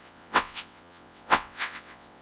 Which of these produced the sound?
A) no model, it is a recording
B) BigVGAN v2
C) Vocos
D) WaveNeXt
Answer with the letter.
D